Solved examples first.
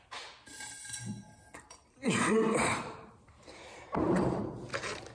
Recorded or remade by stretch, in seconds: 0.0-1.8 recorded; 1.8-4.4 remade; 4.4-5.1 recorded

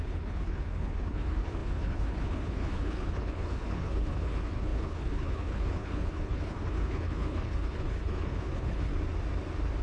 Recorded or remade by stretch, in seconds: 0.0-8.9 remade; 8.9-9.8 recorded

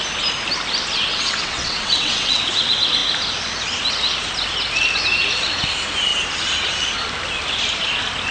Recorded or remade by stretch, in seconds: 0.0-1.1 recorded; 1.1-2.4 remade; 2.4-8.3 recorded

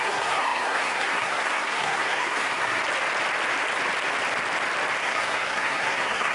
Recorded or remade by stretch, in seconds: 0.0-2.8 remade; 2.8-5.0 recorded; 5.0-6.3 remade

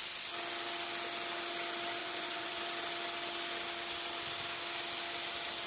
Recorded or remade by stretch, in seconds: 0.0-2.0 recorded; 2.0-2.6 remade; 2.6-5.7 recorded

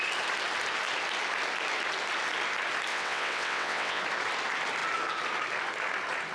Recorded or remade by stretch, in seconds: 0.0-2.9 recorded; 2.9-4.0 remade; 4.0-6.3 recorded